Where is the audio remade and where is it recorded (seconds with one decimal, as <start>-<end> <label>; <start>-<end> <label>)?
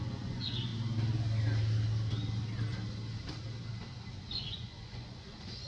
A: 0.0-0.7 remade; 0.7-4.1 recorded; 4.1-5.7 remade